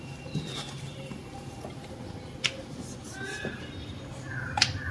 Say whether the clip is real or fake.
real